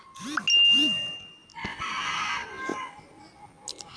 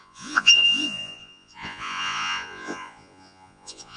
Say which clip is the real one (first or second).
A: first